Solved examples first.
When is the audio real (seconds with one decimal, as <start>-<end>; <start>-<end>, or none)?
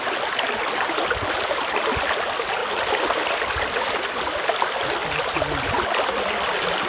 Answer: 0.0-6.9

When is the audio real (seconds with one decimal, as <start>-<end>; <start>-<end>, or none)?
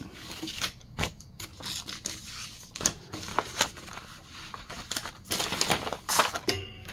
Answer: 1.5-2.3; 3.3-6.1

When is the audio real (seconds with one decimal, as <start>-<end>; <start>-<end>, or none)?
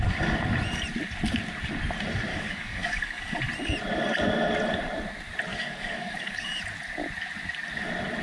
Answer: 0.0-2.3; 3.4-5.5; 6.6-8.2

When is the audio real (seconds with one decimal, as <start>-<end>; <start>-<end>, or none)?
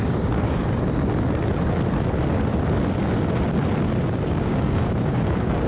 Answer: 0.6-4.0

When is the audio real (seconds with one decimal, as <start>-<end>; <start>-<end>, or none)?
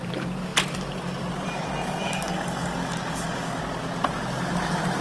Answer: 0.0-2.0; 3.6-5.0